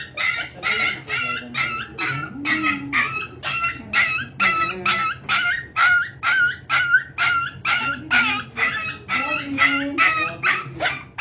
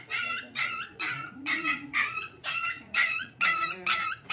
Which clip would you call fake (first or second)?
second